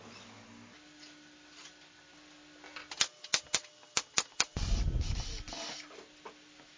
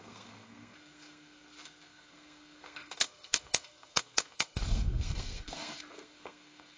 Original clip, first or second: first